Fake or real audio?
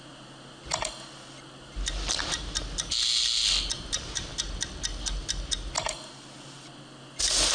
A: real